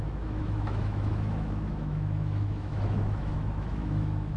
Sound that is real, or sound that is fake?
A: fake